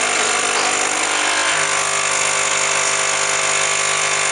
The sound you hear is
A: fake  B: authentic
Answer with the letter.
B